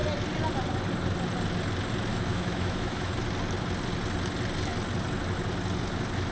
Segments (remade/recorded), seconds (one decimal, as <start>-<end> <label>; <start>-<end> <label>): 0.0-2.1 recorded; 2.1-3.1 remade; 3.1-6.3 recorded